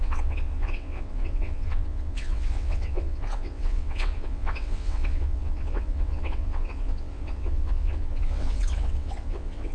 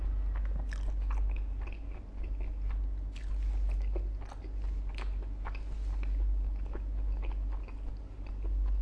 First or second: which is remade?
first